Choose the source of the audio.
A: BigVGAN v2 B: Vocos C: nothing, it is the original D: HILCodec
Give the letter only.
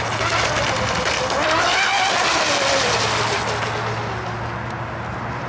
C